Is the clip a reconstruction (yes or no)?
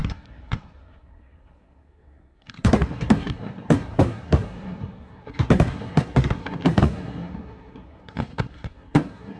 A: yes